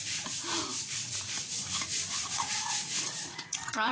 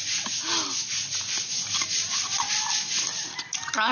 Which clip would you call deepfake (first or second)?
first